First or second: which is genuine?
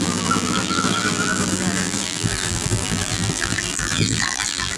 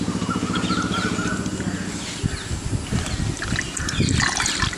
second